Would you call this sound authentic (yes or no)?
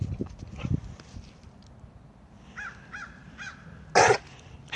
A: yes